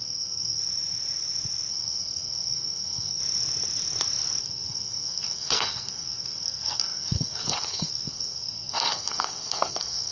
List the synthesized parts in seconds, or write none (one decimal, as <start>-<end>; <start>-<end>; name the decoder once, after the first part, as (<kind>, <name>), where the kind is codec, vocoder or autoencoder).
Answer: 0.0-0.6 (codec, SNAC); 1.7-3.2; 4.4-10.1